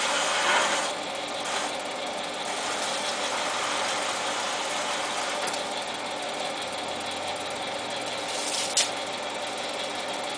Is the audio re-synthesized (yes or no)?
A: no